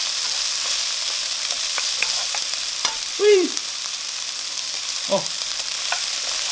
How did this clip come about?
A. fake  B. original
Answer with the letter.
A